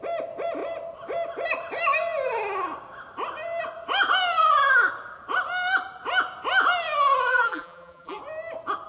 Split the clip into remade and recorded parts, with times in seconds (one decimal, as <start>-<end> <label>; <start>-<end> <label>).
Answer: 0.0-7.3 recorded; 7.3-8.2 remade; 8.2-8.9 recorded